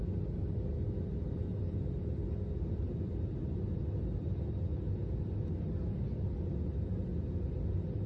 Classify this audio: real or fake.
real